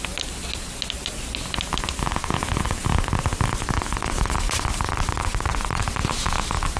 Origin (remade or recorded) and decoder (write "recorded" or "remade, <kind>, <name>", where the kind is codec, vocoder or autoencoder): recorded